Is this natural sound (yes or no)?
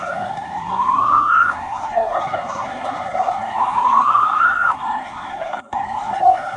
no